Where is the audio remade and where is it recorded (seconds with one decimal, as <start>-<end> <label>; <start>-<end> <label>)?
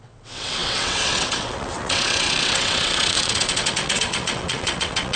0.0-5.2 remade